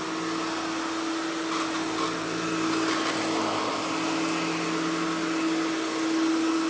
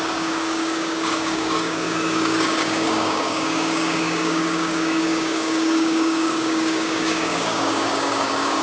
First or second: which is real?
first